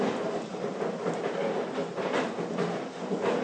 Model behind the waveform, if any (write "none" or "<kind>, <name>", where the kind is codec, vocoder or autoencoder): none